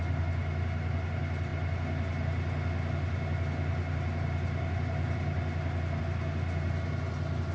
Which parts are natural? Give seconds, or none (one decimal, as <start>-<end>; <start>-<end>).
0.0-7.5